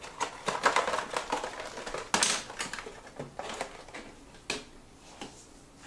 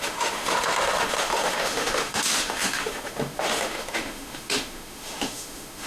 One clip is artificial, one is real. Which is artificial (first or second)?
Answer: second